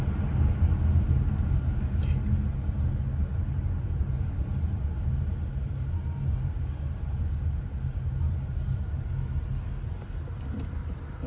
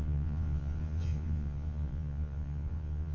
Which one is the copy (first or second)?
second